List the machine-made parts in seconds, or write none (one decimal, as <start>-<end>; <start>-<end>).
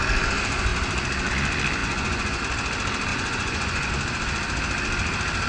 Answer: 1.8-2.4; 3.1-3.9